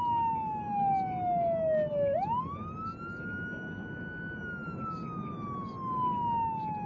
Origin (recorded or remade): recorded